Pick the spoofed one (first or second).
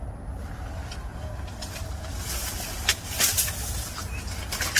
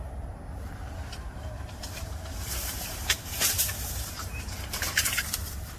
second